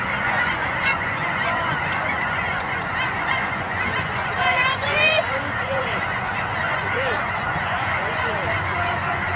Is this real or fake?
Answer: fake